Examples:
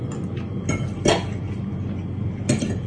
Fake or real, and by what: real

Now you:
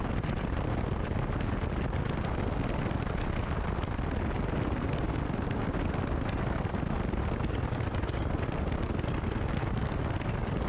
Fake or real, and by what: real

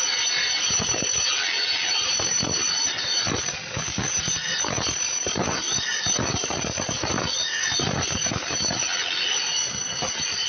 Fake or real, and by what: real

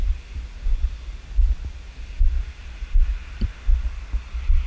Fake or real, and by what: real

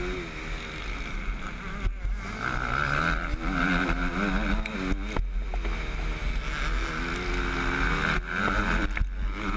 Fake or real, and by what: real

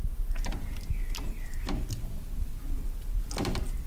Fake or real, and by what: real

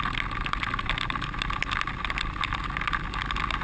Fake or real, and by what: real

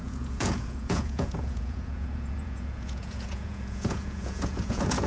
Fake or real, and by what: fake, vocoder, Vocos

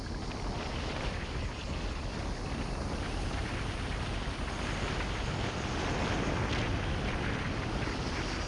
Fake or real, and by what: real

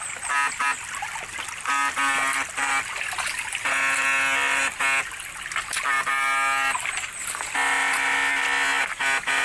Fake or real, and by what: real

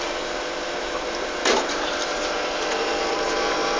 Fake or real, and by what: fake, vocoder, BigVGAN v2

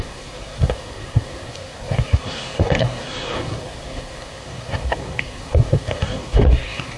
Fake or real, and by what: fake, codec, SNAC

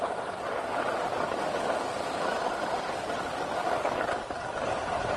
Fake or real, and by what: real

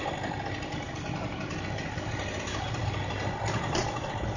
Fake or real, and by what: real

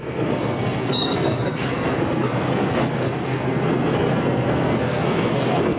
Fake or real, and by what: fake, codec, SNAC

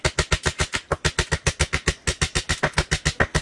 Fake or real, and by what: real